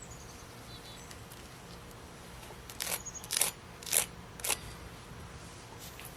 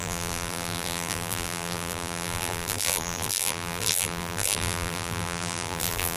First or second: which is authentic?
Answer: first